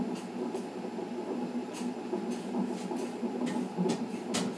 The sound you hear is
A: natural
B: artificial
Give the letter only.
A